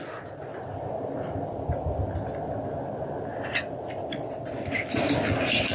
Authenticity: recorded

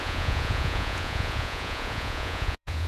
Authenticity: remade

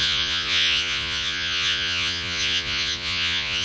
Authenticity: remade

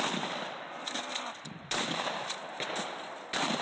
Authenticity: recorded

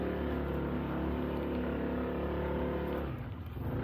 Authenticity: recorded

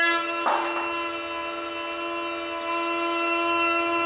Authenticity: recorded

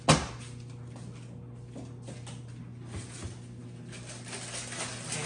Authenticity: recorded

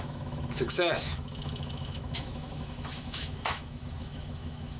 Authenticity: remade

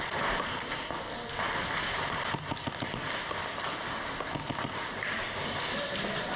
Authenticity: recorded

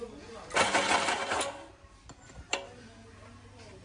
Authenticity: recorded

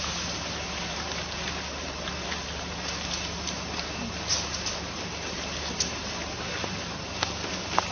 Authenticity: remade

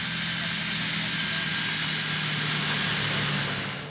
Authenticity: recorded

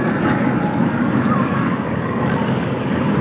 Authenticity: remade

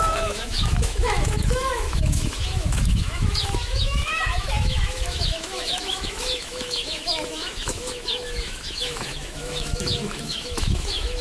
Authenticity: remade